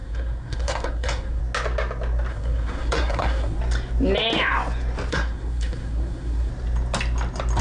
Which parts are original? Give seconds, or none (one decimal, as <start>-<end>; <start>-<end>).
1.4-2.3; 3.6-5.1; 6.5-7.6